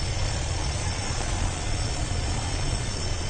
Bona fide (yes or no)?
no